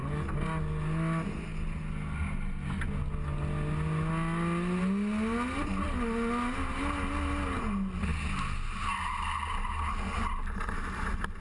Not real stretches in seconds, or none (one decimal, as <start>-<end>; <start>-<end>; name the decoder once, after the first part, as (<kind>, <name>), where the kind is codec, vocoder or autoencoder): none